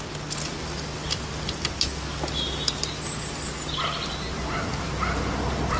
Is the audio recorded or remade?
recorded